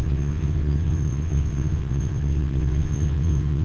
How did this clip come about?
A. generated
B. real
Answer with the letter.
A